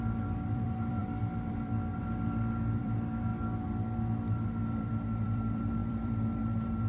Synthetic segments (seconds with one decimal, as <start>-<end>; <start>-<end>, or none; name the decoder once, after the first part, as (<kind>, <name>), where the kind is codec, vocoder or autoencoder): 0.0-3.3 (vocoder, BigVGAN v2); 4.6-6.9